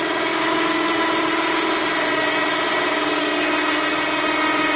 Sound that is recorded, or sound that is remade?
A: recorded